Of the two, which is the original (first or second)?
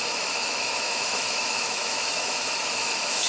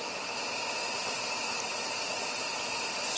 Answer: second